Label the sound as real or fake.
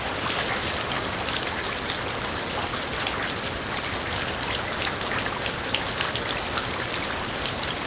real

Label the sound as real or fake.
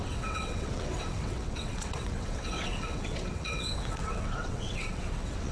fake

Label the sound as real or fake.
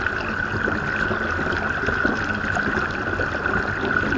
real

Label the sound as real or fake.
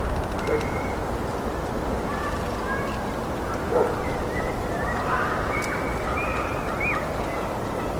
real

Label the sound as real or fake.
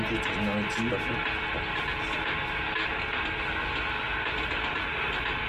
real